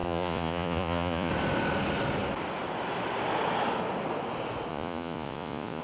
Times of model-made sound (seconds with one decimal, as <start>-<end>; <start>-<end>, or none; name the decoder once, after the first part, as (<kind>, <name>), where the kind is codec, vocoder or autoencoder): 0.0-1.3 (vocoder, Vocos); 4.7-5.8